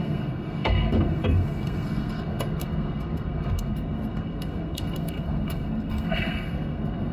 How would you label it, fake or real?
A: fake